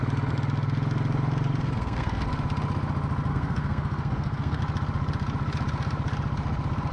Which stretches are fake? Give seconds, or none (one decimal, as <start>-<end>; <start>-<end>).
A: 1.6-2.2; 3.3-4.6